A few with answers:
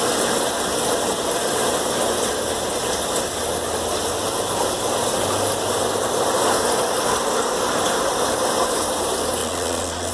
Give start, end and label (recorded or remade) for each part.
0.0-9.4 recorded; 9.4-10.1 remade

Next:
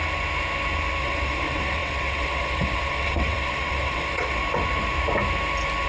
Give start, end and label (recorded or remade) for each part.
0.0-1.0 recorded; 1.0-4.4 remade; 4.4-5.9 recorded

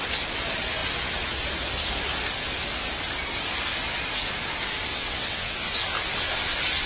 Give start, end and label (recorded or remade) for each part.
0.0-4.9 recorded; 4.9-5.7 remade; 5.7-6.9 recorded

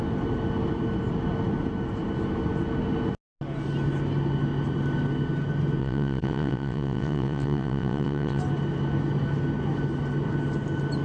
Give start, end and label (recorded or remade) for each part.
0.0-5.8 recorded; 5.8-8.4 remade; 8.4-11.0 recorded

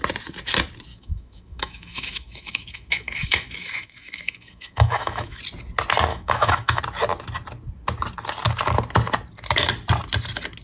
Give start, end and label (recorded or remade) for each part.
0.0-0.9 recorded; 0.9-5.4 remade; 5.4-6.1 recorded; 6.1-6.8 remade; 6.8-10.6 recorded